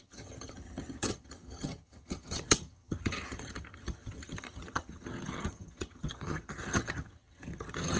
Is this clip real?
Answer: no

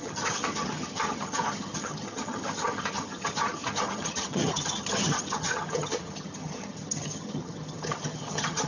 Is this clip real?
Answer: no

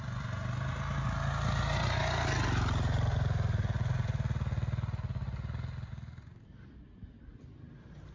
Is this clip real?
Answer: yes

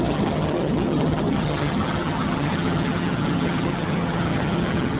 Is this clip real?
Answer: no